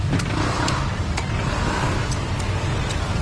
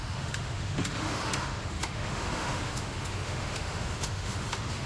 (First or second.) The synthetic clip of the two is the second